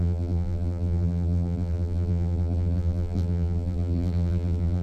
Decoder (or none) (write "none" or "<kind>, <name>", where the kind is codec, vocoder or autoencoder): vocoder, BigVGAN v2